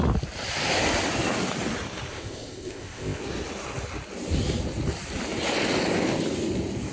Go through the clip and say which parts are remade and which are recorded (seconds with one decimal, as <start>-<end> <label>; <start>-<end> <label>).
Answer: 0.0-2.1 recorded; 2.1-3.2 remade; 3.2-6.9 recorded